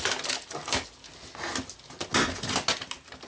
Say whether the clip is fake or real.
real